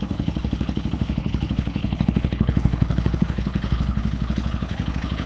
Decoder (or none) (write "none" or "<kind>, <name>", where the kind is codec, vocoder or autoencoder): codec, HILCodec